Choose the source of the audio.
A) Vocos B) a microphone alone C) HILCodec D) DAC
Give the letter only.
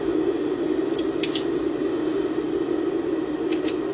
B